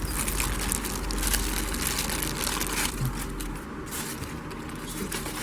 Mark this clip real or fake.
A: real